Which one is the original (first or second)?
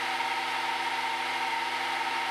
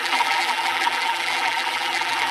first